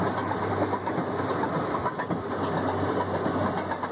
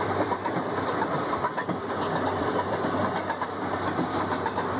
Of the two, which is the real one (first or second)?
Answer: first